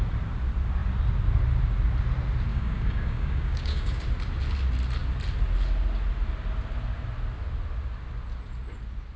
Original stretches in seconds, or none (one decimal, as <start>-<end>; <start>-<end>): 0.0-2.5; 4.0-9.2